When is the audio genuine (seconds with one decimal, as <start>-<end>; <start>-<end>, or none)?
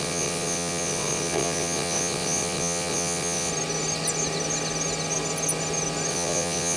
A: 3.5-6.1